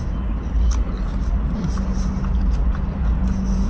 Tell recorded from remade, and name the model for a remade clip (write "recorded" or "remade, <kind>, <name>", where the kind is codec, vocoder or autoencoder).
recorded